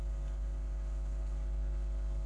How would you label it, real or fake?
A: fake